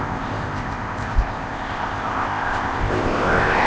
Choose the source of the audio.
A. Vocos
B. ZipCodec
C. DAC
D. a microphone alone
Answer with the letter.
B